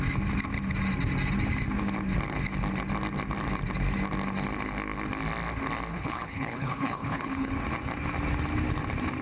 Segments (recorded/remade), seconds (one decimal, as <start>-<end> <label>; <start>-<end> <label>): 0.0-5.9 recorded; 5.9-7.5 remade; 7.5-9.2 recorded